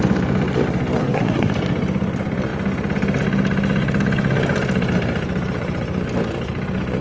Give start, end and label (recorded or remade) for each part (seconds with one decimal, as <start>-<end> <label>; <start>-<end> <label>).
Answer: 0.0-1.0 recorded; 1.0-1.5 remade; 1.5-7.0 recorded